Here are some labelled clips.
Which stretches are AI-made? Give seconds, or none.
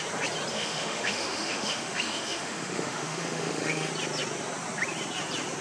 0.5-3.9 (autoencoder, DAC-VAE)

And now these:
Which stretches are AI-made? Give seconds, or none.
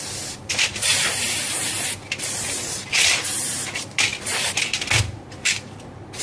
none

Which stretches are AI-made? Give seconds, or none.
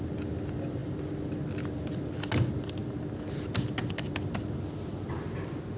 none